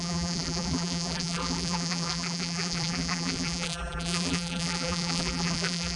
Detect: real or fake fake